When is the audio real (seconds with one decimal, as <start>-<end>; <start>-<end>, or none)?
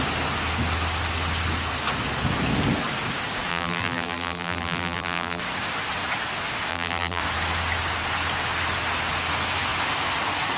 0.0-3.5; 5.4-6.7; 7.2-10.6